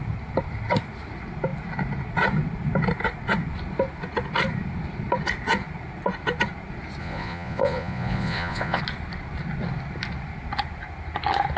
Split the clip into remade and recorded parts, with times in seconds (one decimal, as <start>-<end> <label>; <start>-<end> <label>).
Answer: 0.0-7.0 recorded; 7.0-8.8 remade; 8.8-11.6 recorded